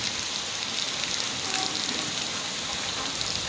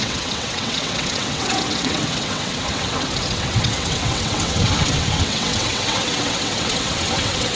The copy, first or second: second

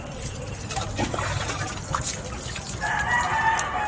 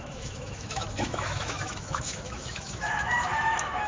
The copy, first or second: second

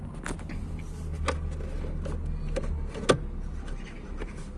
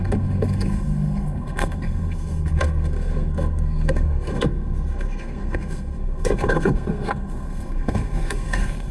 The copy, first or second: second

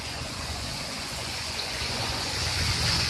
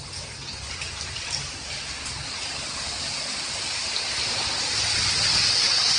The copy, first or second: first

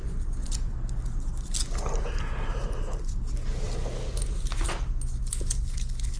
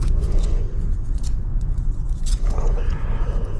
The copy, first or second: second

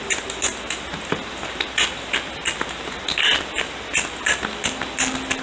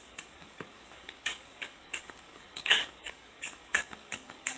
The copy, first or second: second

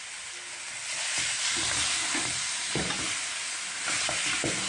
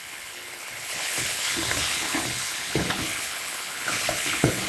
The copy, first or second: second